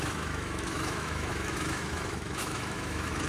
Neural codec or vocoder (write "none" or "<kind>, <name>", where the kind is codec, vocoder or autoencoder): autoencoder, DAC-VAE